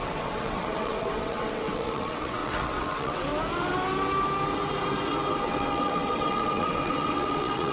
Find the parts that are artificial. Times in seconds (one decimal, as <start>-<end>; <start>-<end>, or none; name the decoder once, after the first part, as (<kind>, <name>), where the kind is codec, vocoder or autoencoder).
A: 0.0-3.3 (vocoder, WaveNeXt); 5.4-7.7